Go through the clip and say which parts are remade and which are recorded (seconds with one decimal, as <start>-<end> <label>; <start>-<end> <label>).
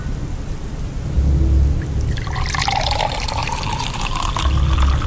0.0-3.4 recorded; 3.4-4.4 remade; 4.4-5.1 recorded